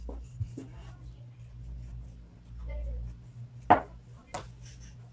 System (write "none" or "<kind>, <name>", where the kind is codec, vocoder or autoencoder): none